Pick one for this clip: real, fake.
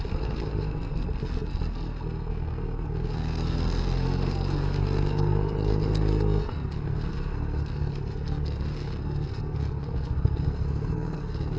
fake